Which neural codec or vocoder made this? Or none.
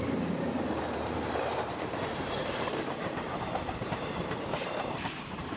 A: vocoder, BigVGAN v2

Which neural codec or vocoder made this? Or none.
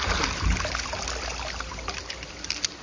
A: none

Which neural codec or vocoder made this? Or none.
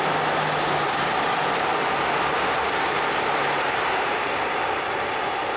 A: none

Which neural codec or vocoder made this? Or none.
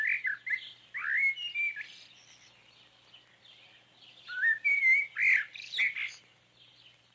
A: none